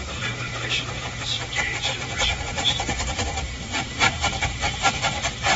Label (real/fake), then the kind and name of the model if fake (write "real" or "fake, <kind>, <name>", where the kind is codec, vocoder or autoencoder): fake, vocoder, BigVGAN v2